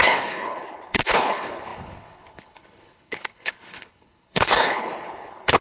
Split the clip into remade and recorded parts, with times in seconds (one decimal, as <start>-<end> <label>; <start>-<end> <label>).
0.0-5.6 remade